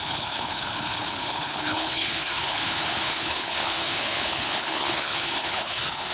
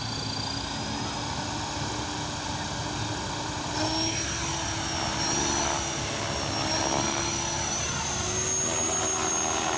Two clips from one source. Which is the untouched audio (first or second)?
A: second